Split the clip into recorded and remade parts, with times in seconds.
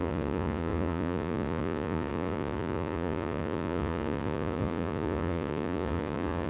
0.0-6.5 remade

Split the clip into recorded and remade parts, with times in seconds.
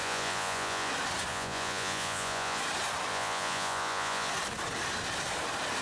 0.0-0.9 remade; 0.9-1.3 recorded; 1.3-2.6 remade; 2.6-3.1 recorded; 3.1-4.3 remade; 4.3-5.8 recorded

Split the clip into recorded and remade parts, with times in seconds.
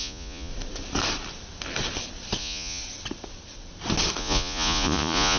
0.0-0.5 remade; 0.5-2.4 recorded; 2.4-2.8 remade; 2.8-4.2 recorded; 4.2-5.4 remade